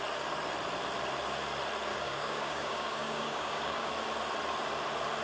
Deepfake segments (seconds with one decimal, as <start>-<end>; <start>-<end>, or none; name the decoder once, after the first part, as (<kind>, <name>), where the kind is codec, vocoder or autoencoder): 1.9-3.9 (codec, DAC)